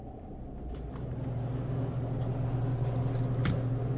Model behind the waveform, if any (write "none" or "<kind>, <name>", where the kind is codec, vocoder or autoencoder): none